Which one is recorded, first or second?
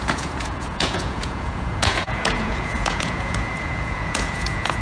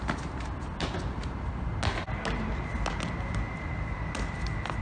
second